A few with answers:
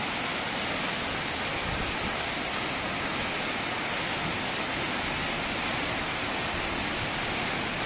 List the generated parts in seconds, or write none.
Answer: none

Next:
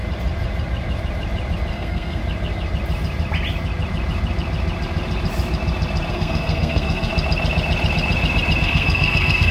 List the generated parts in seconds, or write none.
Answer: 1.7-2.2 (codec, SNAC); 6.1-7.1; 8.6-9.5

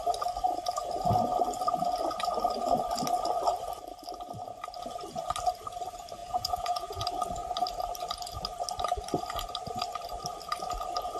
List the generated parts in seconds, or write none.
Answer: 6.2-7.0 (vocoder, Vocos)

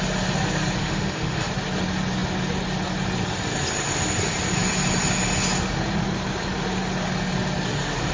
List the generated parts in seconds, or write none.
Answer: 0.8-1.5 (autoencoder, DAC-VAE)

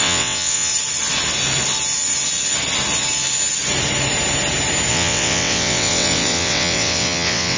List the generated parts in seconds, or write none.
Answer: 0.0-0.7 (vocoder, WaveNeXt); 4.9-7.6

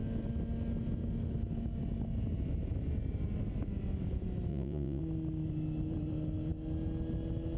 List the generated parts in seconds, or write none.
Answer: 4.5-5.0 (vocoder, Vocos)